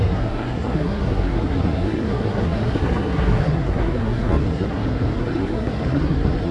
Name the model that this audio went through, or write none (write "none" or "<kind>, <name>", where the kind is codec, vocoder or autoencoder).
codec, SNAC